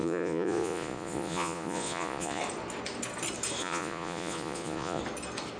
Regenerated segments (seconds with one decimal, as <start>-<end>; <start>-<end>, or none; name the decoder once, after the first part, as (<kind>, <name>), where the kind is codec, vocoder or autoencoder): 0.0-2.4 (vocoder, Vocos); 3.6-5.0